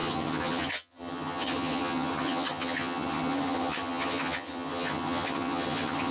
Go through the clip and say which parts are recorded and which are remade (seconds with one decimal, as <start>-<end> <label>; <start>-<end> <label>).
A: 0.0-6.1 remade